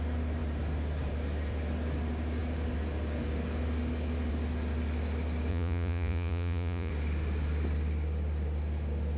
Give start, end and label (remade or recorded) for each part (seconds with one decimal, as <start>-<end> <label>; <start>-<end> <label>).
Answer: 0.0-5.5 recorded; 5.5-6.9 remade; 6.9-9.2 recorded